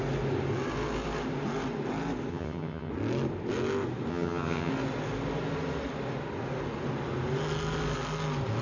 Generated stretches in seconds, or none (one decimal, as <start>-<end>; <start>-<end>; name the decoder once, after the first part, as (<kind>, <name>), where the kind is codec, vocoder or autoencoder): 2.3-2.9 (vocoder, HiFi-GAN); 4.1-4.7